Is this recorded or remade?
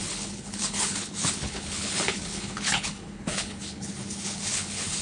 remade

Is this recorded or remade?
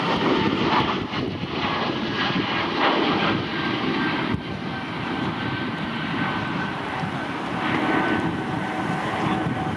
recorded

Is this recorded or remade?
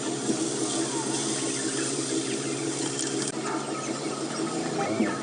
recorded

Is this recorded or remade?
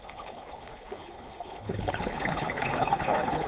remade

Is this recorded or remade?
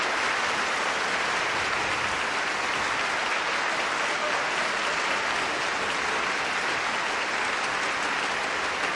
recorded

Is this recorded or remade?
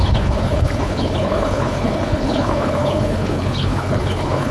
remade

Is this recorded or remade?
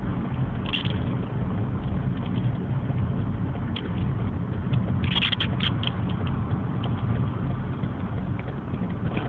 recorded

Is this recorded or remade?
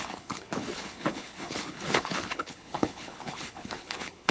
remade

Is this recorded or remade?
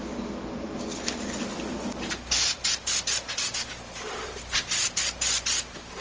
recorded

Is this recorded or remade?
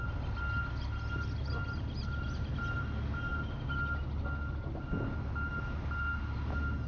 recorded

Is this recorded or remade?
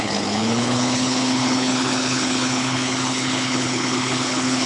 remade